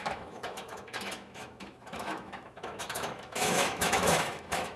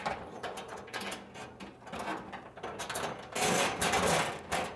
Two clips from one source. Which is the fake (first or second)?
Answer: first